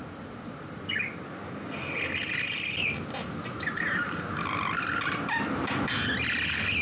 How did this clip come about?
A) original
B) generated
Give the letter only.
A